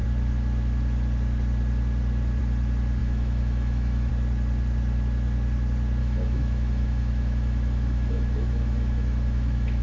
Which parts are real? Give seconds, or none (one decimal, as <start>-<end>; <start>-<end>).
0.0-3.0; 4.1-6.0